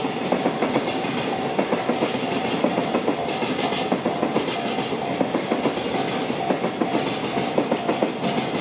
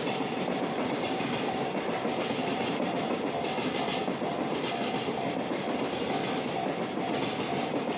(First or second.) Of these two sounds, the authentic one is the first